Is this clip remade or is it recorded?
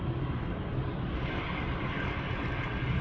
recorded